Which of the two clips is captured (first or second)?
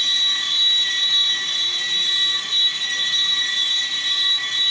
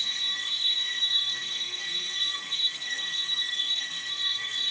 first